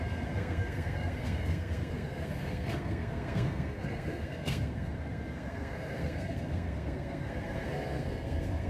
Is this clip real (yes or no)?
no